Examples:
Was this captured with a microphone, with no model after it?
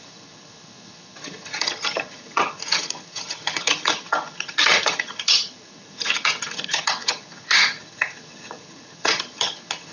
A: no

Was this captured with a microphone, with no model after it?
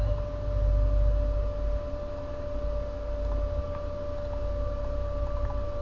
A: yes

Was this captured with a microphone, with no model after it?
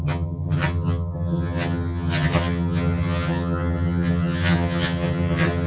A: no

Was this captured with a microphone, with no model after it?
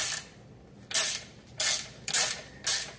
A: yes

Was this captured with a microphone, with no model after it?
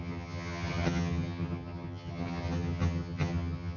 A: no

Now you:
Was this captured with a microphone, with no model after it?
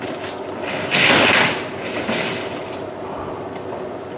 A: yes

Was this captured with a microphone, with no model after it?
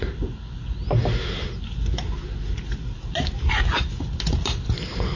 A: yes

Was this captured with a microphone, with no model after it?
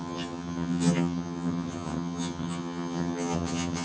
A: no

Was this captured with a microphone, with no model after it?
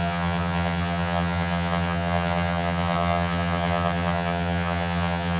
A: no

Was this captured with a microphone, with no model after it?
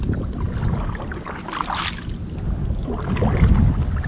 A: yes